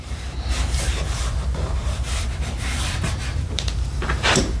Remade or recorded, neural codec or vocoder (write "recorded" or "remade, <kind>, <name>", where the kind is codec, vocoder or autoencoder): remade, vocoder, BigVGAN v2